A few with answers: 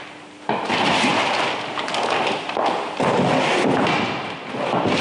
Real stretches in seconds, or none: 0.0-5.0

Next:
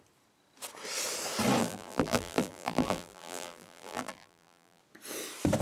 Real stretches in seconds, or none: 0.0-1.6; 4.8-5.6